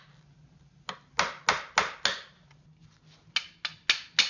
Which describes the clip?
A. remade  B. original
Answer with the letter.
B